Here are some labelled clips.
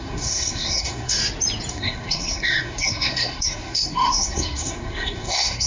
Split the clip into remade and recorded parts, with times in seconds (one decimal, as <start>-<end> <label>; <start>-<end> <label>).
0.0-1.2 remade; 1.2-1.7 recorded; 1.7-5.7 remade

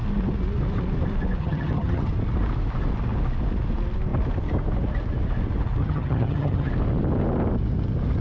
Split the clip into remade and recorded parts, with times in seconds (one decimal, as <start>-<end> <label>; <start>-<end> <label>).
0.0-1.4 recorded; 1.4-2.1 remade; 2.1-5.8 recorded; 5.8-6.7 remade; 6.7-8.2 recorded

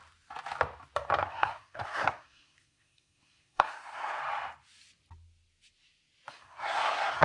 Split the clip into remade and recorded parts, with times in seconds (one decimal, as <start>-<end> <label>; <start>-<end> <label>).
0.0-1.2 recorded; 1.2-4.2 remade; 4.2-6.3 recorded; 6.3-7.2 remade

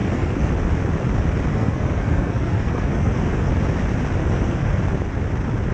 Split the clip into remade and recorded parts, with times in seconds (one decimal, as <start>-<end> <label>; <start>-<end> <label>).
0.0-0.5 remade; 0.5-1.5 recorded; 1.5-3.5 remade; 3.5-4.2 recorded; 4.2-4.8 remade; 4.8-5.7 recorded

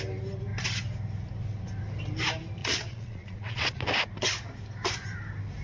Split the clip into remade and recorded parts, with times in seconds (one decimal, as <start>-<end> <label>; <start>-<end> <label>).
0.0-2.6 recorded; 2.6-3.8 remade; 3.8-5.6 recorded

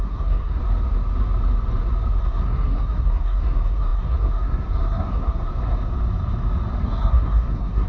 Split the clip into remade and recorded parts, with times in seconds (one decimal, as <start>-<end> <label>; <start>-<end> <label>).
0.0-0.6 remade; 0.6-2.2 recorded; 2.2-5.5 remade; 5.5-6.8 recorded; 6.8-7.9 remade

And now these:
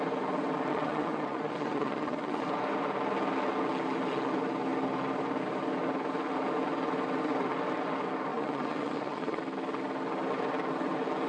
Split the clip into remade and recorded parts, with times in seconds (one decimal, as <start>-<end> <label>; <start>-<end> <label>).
0.0-0.7 recorded; 0.7-2.4 remade; 2.4-8.3 recorded; 8.3-9.4 remade; 9.4-11.3 recorded

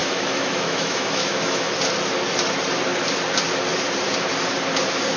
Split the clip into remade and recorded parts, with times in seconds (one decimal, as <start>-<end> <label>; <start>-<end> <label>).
0.0-1.7 remade; 1.7-5.2 recorded